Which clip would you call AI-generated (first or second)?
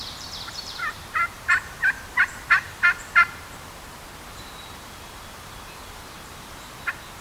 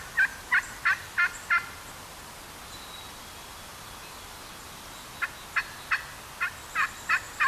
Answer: first